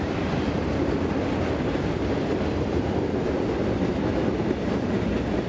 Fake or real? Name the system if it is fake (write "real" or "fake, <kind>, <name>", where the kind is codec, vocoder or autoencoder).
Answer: fake, vocoder, BigVGAN v2